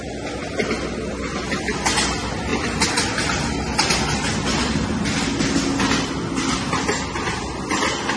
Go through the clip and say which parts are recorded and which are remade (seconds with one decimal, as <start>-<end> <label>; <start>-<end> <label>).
0.0-2.5 recorded; 2.5-4.0 remade; 4.0-8.2 recorded